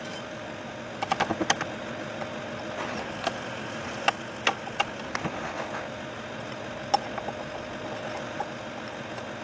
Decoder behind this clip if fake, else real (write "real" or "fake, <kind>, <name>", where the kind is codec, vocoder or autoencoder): real